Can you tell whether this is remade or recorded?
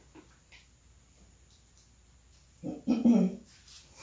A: recorded